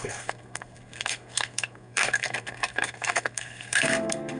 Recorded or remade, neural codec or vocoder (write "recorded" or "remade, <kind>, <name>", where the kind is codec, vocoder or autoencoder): remade, codec, SNAC